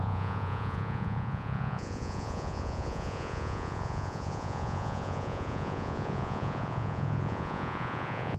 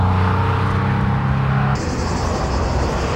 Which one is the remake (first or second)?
first